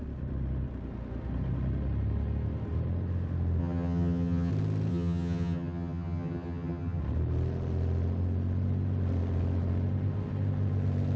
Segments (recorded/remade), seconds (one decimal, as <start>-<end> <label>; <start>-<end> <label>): 0.0-3.6 recorded; 3.6-4.5 remade; 4.5-4.9 recorded; 4.9-7.0 remade; 7.0-11.2 recorded